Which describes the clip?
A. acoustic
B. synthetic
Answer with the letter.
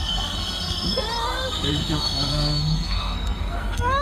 B